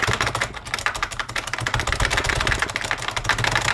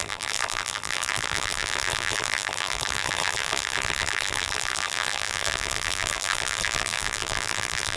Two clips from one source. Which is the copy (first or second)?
second